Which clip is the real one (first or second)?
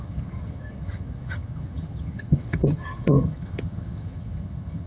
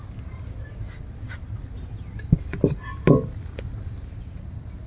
second